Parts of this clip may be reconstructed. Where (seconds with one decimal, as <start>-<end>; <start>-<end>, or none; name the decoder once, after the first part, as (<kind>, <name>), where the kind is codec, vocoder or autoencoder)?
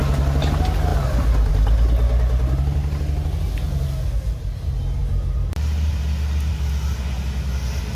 none